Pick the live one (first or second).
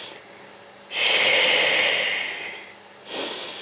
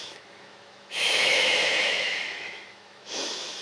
first